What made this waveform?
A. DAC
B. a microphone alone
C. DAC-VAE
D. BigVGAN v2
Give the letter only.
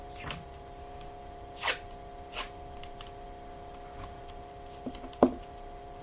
B